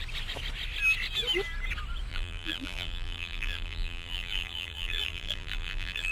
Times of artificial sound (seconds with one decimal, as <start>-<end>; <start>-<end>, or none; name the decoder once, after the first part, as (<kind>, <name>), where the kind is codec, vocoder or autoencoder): 2.1-6.1 (vocoder, BigVGAN v2)